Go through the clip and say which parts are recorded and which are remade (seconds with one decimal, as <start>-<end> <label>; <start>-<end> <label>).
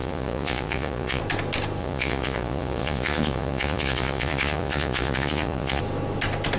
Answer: 0.0-1.2 remade; 1.2-1.8 recorded; 1.8-5.8 remade; 5.8-6.6 recorded